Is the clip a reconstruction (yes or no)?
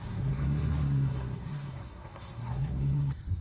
yes